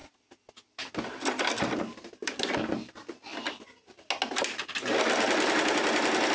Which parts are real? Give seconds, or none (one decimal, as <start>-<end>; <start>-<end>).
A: 0.0-6.3